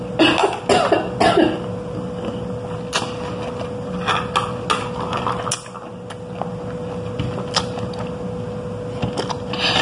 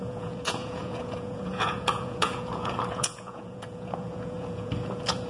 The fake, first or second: second